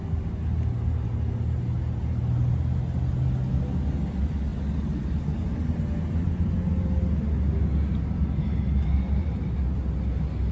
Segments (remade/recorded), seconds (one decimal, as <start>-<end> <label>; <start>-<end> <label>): 0.0-10.5 recorded